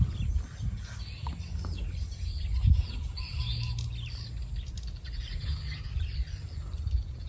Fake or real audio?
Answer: real